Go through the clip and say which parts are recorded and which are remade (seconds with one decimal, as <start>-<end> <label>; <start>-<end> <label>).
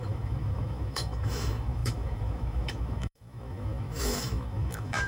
0.0-5.1 remade